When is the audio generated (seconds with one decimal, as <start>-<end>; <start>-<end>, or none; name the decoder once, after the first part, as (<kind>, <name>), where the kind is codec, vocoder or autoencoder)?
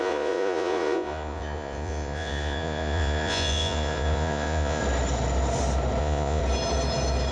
0.0-4.8 (vocoder, Vocos); 6.0-6.4